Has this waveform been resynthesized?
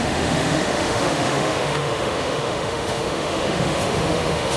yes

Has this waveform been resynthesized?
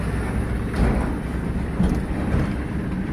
no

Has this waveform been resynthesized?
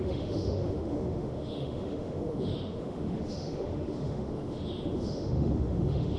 yes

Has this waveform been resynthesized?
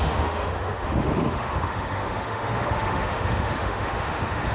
yes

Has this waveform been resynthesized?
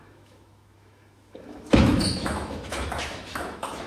yes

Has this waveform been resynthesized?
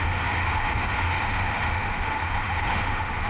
yes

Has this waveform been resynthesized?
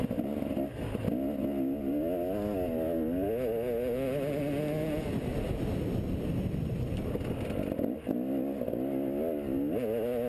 no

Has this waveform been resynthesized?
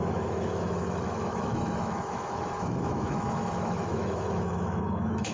yes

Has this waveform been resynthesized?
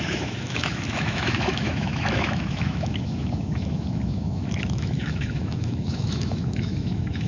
yes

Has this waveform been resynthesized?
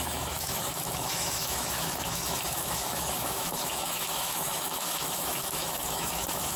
yes